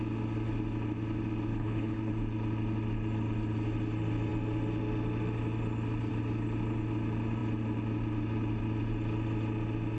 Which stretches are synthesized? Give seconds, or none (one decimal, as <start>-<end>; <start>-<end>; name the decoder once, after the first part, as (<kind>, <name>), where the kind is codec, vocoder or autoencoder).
1.5-2.1 (codec, HILCodec)